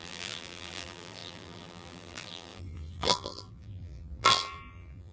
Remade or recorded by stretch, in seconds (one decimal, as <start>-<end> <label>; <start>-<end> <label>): 0.0-5.1 remade